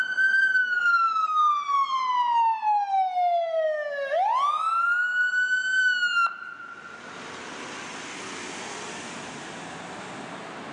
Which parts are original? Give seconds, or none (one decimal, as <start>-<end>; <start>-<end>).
0.0-0.6; 1.5-10.7